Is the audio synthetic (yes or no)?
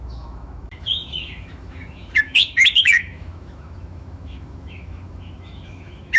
yes